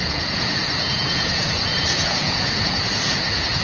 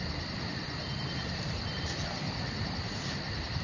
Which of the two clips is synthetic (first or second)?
first